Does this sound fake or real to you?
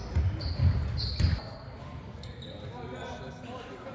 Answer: real